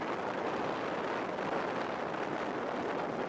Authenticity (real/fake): real